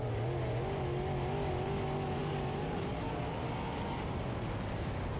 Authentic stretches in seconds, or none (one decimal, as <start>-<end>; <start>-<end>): 0.0-2.2; 4.2-5.2